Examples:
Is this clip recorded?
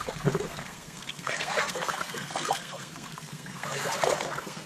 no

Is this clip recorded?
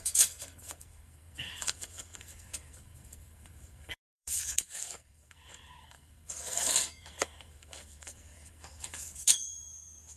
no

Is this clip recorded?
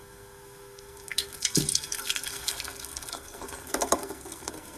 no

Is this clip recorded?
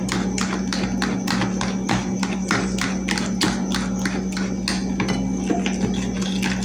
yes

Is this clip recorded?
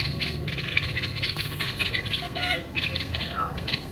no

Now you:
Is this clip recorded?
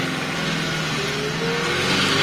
yes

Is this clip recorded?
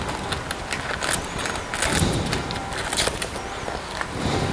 yes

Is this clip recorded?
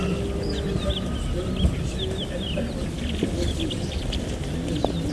yes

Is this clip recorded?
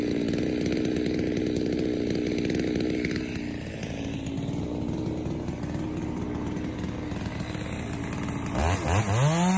yes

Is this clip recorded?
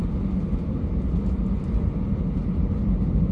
yes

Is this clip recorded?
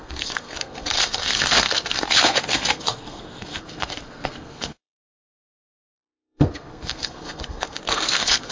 no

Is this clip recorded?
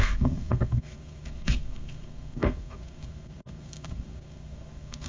no